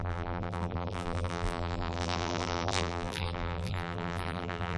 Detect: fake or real fake